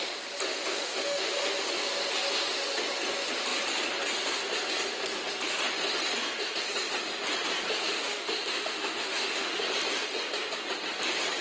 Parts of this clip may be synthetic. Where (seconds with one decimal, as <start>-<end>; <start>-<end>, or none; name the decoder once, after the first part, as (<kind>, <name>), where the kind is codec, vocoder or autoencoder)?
0.5-1.7 (autoencoder, DAC-VAE); 7.8-9.6